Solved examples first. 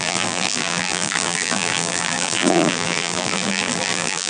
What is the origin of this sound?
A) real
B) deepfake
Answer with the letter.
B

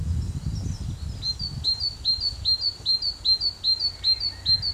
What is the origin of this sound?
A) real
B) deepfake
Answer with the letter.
A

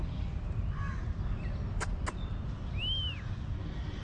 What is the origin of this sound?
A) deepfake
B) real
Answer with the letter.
B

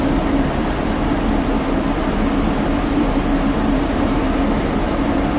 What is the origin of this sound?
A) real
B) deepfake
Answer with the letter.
B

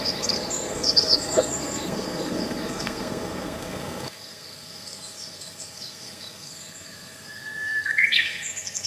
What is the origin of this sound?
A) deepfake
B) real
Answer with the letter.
A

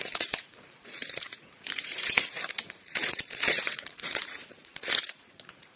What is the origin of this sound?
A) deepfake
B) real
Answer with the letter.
A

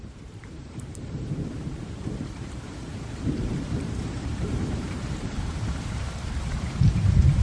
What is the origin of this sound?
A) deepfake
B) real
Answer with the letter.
A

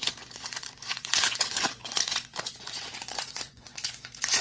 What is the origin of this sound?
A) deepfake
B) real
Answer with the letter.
A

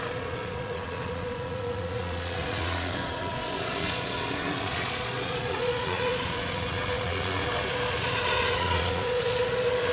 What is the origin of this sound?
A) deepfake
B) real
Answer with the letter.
A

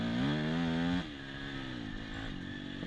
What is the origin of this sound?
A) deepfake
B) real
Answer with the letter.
B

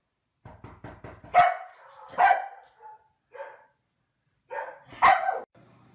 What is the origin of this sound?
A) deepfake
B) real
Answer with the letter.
B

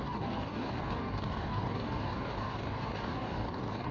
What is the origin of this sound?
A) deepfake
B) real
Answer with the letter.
A